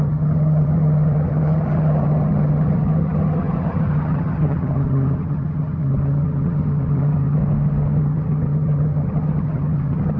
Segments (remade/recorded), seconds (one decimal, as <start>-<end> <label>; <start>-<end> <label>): 0.0-7.4 remade; 7.4-8.0 recorded; 8.0-10.2 remade